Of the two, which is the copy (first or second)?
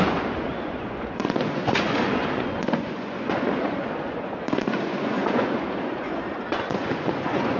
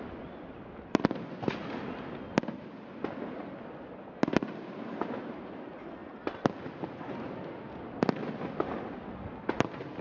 first